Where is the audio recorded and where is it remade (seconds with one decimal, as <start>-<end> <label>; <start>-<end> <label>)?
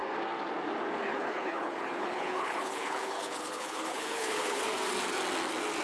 0.0-1.1 recorded; 1.1-4.6 remade; 4.6-5.8 recorded